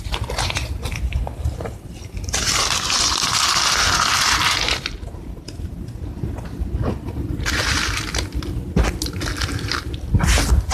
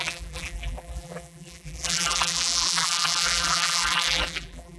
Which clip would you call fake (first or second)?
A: second